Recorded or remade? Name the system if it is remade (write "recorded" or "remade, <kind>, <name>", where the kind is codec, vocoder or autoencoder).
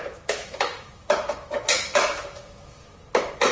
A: remade, autoencoder, DAC-VAE